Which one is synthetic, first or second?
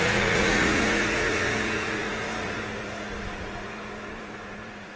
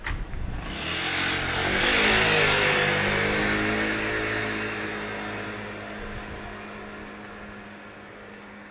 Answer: first